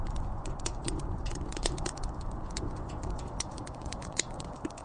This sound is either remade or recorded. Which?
remade